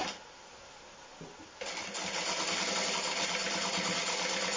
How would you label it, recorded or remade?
recorded